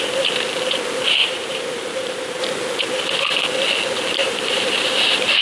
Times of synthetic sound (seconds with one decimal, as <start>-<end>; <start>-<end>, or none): 1.2-2.4; 4.2-5.4